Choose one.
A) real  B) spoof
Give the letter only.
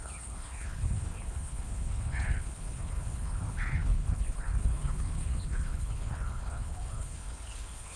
B